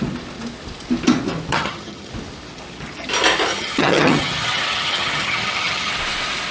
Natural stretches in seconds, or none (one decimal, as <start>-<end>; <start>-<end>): 0.0-1.5; 2.1-3.5; 5.9-6.5